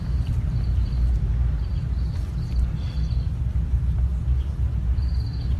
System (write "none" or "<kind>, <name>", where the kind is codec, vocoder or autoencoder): none